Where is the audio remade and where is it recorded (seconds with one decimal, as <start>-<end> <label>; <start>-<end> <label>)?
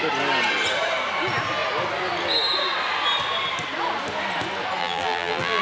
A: 0.0-4.8 recorded; 4.8-5.6 remade